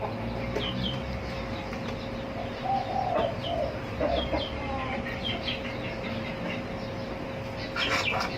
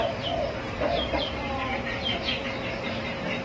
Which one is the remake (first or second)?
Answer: second